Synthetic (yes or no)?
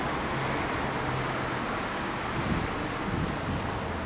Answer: no